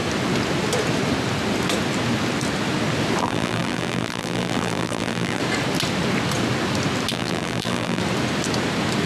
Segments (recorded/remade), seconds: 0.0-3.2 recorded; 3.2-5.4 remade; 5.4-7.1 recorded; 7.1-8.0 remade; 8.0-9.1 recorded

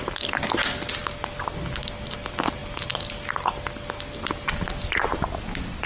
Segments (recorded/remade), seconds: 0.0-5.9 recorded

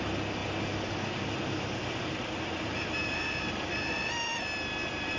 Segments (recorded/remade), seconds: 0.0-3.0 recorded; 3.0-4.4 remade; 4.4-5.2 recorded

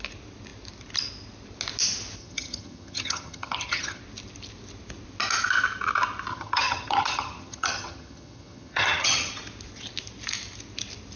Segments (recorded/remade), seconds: 0.0-2.2 recorded; 2.2-4.0 remade; 4.0-6.3 recorded; 6.3-9.3 remade; 9.3-11.2 recorded

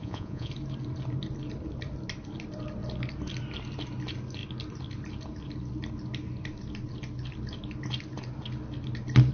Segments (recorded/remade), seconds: 0.0-0.5 remade; 0.5-9.3 recorded

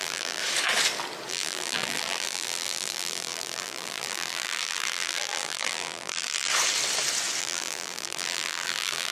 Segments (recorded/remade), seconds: 0.0-0.4 remade; 0.4-1.3 recorded; 1.3-6.5 remade; 6.5-7.4 recorded; 7.4-9.1 remade